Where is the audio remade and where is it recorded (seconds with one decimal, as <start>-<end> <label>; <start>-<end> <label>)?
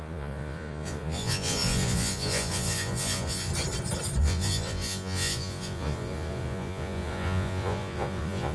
0.0-3.5 remade; 3.5-4.2 recorded; 4.2-8.5 remade